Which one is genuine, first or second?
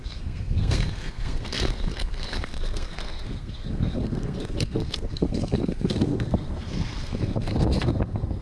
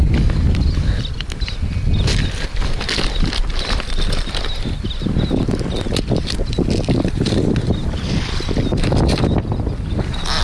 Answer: second